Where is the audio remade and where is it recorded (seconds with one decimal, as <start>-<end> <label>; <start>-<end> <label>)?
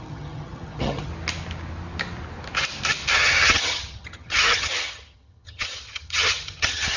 0.0-1.1 remade; 1.1-3.1 recorded; 3.1-7.0 remade